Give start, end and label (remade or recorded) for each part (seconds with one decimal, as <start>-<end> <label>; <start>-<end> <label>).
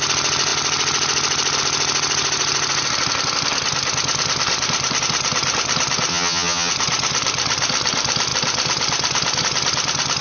0.0-6.1 recorded; 6.1-6.7 remade; 6.7-10.2 recorded